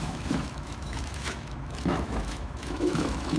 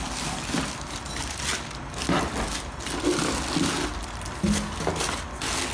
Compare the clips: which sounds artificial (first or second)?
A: first